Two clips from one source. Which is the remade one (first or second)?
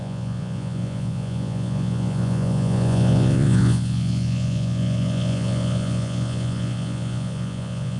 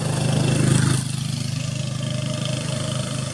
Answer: first